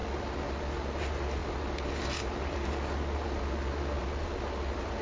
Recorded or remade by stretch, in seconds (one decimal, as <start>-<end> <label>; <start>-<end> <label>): 0.0-5.0 recorded